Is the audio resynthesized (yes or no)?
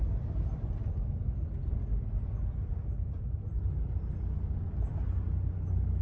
no